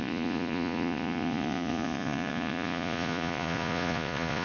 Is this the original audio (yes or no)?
no